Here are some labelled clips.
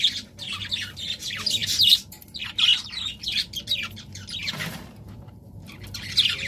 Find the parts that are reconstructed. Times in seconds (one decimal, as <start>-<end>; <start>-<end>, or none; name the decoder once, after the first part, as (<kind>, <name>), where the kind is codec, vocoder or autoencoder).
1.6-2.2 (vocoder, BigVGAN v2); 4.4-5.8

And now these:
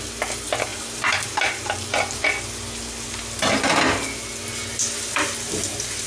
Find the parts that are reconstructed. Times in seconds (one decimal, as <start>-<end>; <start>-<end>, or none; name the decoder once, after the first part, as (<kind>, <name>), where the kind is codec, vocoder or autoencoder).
0.7-2.2 (vocoder, BigVGAN v2)

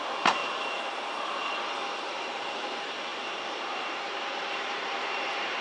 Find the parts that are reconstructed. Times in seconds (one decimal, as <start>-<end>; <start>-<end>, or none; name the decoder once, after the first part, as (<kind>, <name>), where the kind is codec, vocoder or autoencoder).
0.0-0.4 (vocoder, BigVGAN v2); 2.1-3.1; 3.7-5.6